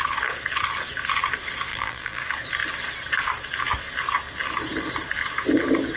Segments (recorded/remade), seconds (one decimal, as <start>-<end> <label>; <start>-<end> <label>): 0.0-1.7 recorded; 1.7-2.2 remade; 2.2-6.0 recorded